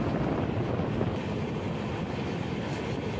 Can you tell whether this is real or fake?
real